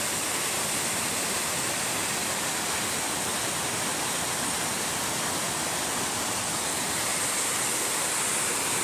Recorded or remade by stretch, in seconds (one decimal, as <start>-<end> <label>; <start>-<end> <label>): 0.0-8.8 recorded